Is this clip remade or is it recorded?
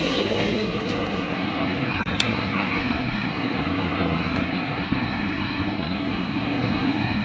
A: remade